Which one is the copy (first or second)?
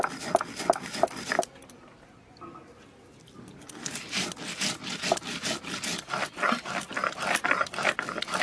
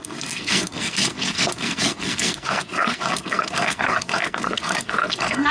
second